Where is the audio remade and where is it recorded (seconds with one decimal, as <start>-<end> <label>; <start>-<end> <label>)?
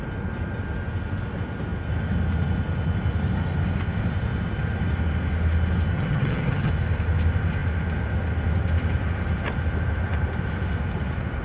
0.0-5.9 recorded; 5.9-6.7 remade; 6.7-11.4 recorded